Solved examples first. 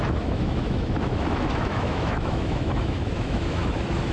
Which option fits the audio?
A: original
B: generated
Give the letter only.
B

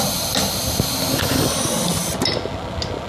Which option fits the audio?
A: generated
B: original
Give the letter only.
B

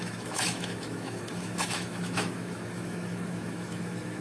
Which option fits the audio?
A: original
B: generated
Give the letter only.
B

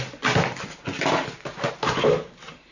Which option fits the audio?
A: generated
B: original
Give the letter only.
B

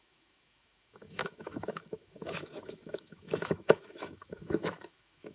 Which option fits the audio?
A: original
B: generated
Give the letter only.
B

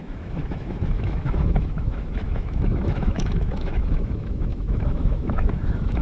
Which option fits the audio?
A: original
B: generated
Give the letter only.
B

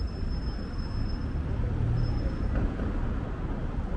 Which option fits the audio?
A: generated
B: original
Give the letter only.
B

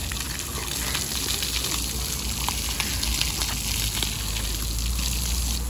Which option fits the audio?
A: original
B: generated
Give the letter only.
A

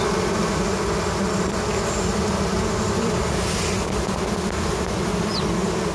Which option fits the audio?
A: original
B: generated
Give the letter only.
A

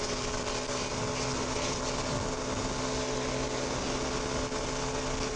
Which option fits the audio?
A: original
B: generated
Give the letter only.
A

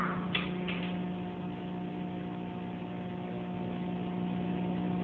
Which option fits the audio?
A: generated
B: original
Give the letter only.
B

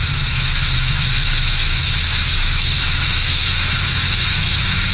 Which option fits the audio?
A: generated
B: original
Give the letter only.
A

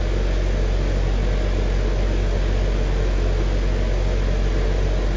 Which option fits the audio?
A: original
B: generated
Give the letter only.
A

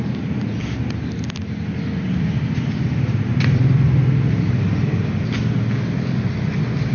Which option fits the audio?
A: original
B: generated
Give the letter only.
A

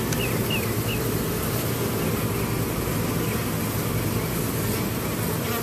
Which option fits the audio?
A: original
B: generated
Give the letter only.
A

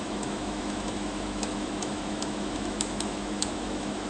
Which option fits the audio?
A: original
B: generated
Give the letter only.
B